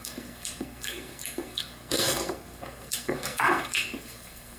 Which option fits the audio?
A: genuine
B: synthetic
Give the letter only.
B